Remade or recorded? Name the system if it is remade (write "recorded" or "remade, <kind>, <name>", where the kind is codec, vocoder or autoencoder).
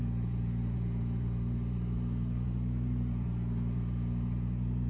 remade, vocoder, Vocos